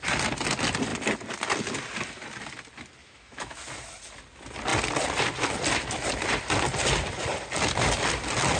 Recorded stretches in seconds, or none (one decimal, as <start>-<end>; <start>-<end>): 0.0-3.0; 3.6-8.6